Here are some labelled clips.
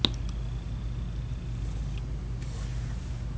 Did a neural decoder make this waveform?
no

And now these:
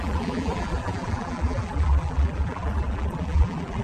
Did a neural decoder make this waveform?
yes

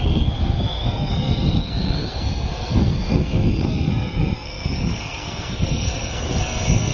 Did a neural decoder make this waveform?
yes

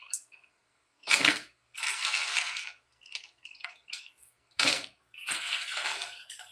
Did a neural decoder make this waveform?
yes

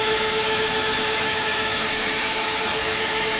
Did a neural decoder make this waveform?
yes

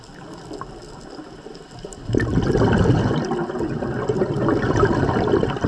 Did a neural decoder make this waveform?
no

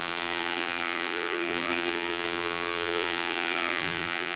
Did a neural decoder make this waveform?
yes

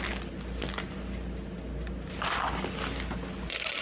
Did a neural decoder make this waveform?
no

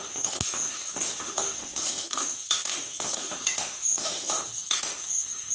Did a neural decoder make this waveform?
yes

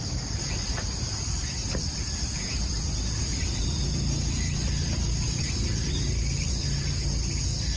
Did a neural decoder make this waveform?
no